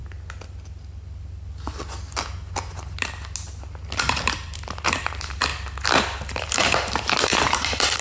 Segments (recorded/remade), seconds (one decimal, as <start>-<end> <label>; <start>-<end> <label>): 0.0-4.0 recorded; 4.0-5.5 remade; 5.5-6.4 recorded; 6.4-8.0 remade